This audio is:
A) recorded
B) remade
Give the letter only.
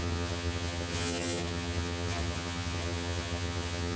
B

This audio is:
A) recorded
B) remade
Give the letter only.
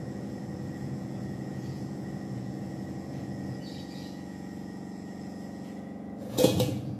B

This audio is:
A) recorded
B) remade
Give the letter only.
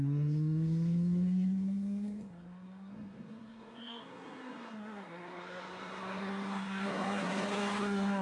B